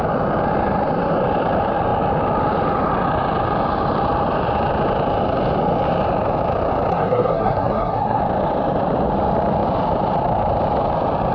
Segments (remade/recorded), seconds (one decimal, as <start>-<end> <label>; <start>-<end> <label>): 0.0-6.9 recorded; 6.9-8.2 remade; 8.2-11.3 recorded